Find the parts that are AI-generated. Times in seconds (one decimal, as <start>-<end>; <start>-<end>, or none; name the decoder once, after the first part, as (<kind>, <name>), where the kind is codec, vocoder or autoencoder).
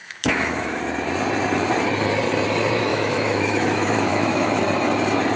0.0-0.8 (autoencoder, DAC-VAE); 2.9-4.6